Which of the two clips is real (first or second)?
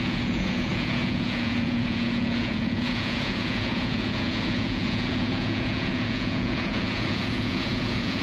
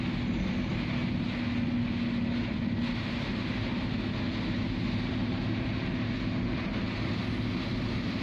second